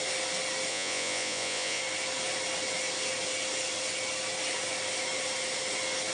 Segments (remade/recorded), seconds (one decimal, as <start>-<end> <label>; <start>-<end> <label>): 0.0-0.7 recorded; 0.7-1.8 remade; 1.8-6.1 recorded